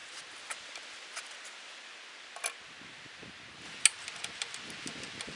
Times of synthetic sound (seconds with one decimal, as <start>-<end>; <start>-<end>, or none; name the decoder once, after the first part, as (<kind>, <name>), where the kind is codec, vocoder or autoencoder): none